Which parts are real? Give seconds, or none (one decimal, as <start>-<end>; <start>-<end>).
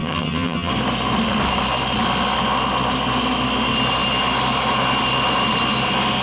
0.7-6.2